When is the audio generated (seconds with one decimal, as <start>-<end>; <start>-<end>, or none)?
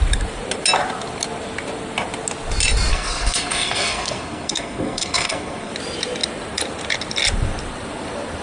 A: 2.9-5.7